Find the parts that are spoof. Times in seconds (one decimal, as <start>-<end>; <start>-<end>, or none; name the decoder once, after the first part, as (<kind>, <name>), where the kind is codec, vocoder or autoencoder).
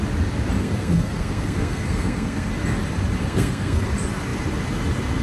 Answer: 0.6-2.5 (codec, SNAC); 3.2-3.9